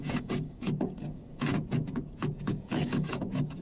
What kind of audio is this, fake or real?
fake